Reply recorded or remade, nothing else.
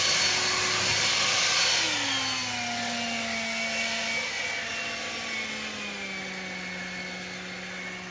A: recorded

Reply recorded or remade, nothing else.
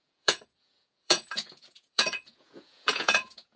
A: remade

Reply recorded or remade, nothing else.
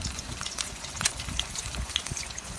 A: remade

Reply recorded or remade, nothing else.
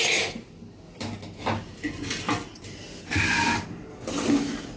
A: recorded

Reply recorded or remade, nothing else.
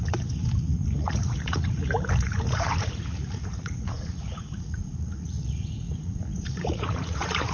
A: remade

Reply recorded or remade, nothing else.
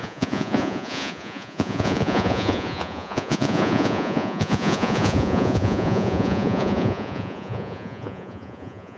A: remade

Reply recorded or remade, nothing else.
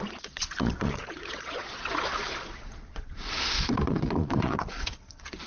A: remade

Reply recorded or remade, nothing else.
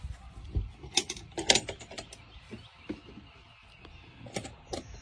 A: recorded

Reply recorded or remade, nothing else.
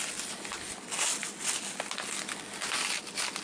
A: recorded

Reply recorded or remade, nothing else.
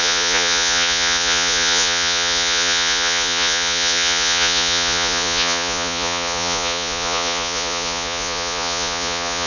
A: remade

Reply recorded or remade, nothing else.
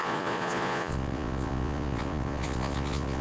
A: remade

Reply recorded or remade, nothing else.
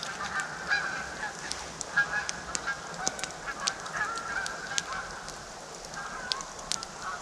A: recorded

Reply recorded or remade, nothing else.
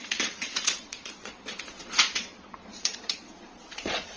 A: remade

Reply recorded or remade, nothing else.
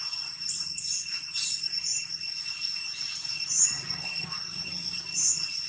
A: remade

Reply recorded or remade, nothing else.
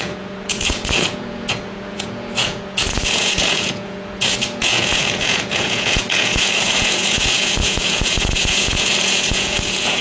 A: remade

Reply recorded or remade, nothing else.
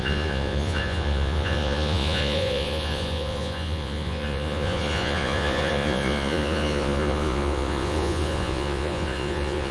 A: remade